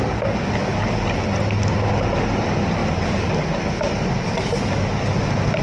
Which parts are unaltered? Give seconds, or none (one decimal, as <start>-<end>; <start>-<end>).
0.0-5.6